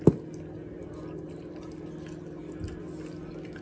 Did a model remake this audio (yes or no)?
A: no